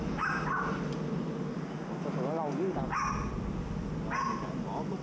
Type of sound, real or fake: real